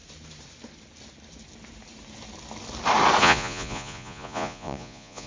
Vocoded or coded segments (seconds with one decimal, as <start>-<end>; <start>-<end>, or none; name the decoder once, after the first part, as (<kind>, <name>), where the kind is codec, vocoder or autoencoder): 3.2-5.3 (vocoder, Vocos)